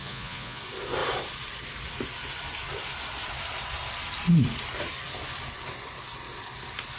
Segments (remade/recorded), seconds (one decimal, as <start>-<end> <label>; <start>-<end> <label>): 0.0-0.6 remade; 0.6-7.0 recorded